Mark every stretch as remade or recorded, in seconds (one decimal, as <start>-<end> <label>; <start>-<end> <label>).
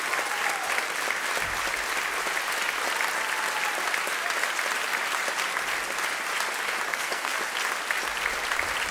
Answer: 0.0-6.9 recorded; 6.9-7.4 remade; 7.4-8.9 recorded